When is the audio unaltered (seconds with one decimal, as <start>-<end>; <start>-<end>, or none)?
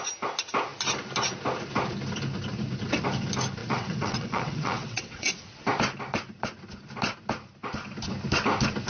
0.0-3.6; 5.3-8.9